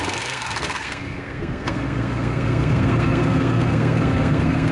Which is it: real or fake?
fake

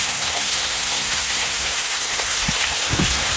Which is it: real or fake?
fake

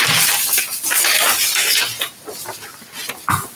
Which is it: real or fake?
real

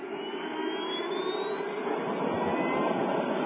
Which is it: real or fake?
real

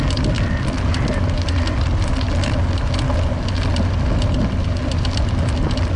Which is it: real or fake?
real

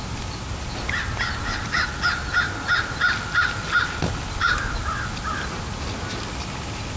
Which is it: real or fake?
real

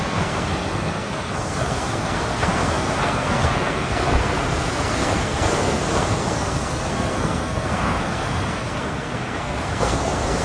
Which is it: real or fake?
fake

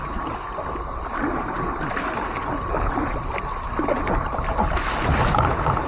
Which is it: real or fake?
real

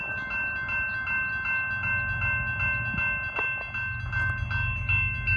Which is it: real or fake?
real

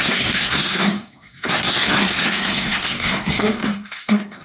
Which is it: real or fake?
fake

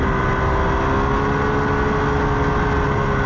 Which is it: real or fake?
real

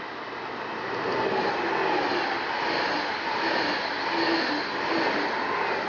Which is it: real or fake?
real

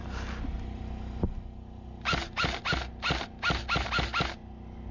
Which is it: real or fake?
real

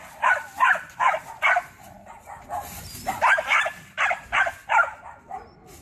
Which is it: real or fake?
real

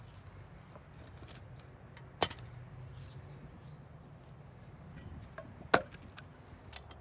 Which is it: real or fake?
real